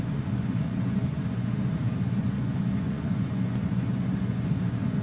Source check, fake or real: fake